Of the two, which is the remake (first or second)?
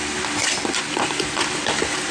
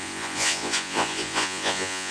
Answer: second